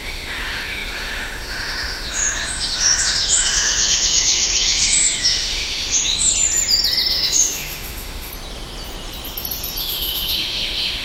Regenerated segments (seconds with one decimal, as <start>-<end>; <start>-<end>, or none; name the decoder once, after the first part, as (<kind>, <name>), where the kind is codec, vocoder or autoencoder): 0.0-6.3 (autoencoder, DAC-VAE); 7.1-8.3; 9.8-11.0